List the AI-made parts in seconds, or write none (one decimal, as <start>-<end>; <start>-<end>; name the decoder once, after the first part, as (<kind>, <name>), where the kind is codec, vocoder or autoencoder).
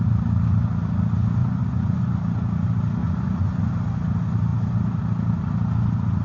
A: 1.4-2.2 (vocoder, Vocos); 3.0-3.6